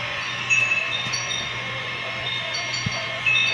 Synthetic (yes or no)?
yes